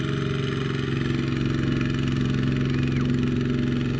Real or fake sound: real